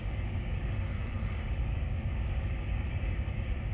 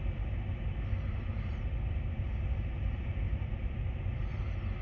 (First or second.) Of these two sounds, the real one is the second